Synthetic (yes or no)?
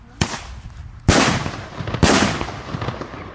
no